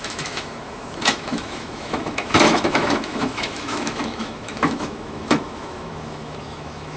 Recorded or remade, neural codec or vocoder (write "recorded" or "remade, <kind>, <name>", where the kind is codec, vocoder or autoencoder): remade, autoencoder, DAC-VAE